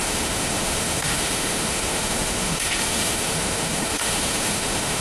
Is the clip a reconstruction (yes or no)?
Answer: yes